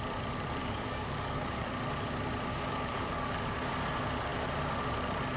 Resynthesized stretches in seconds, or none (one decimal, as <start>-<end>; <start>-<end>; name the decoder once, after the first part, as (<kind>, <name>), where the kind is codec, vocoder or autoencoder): 0.6-1.7 (codec, DAC); 2.5-3.9